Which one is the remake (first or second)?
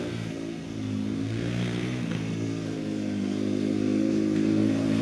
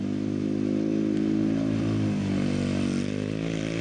first